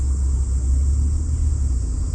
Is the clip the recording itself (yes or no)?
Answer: yes